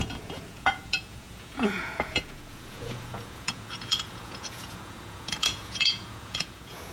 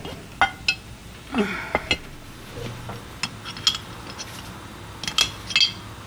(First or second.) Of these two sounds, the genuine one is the second